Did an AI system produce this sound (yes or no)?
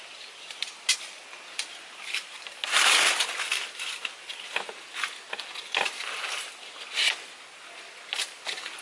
no